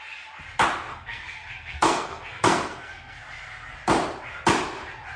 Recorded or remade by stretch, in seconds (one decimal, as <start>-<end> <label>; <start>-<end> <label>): 0.0-0.9 recorded; 0.9-3.2 remade; 3.2-5.2 recorded